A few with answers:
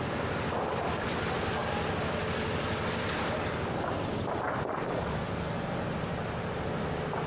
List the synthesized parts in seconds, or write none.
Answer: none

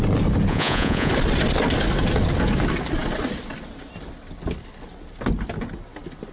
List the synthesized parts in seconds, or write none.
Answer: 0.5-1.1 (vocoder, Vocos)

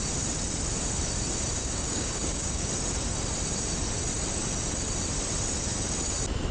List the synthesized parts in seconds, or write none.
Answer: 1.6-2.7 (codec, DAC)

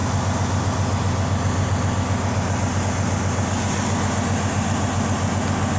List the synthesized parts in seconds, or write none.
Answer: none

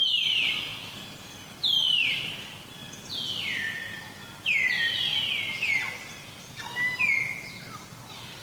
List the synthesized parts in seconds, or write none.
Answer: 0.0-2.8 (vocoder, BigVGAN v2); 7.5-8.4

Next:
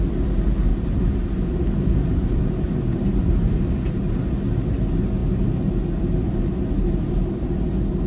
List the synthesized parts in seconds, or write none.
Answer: 0.7-1.3 (vocoder, BigVGAN v2)